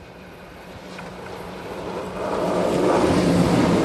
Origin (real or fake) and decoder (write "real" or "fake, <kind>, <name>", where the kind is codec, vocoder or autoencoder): real